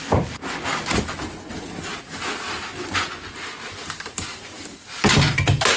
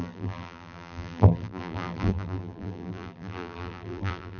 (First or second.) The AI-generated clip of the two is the second